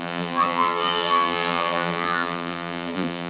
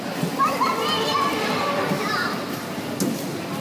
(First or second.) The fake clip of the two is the first